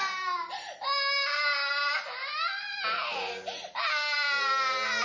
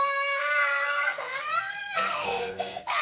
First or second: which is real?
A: first